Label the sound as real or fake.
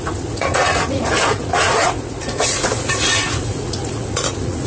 fake